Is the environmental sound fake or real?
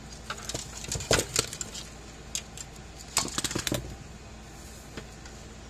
real